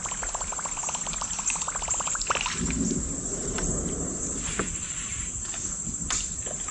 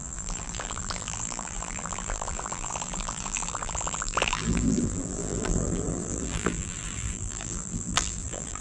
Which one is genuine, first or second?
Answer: first